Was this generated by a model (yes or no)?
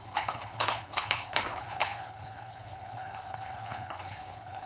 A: yes